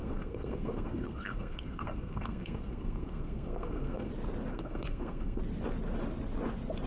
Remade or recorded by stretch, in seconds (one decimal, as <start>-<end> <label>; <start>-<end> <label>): 0.0-4.1 remade; 4.1-4.5 recorded; 4.5-5.4 remade; 5.4-6.9 recorded